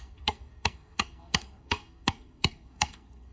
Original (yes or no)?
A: no